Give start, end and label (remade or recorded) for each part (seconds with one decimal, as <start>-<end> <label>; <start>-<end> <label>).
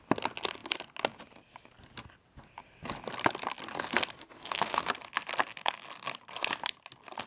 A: 0.0-4.2 recorded; 4.2-4.9 remade; 4.9-7.3 recorded